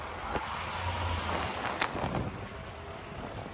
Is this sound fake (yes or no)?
no